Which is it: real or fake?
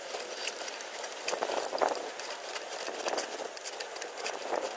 real